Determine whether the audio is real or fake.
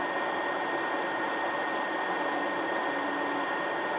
real